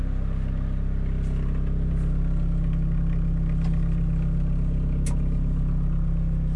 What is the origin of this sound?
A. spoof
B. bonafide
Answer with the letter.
B